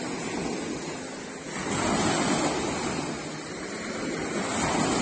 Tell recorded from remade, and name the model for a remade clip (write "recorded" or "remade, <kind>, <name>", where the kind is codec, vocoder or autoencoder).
recorded